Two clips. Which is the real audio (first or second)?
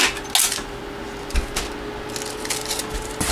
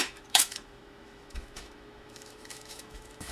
first